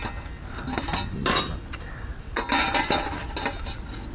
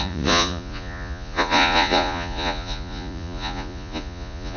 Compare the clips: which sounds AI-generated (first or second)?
second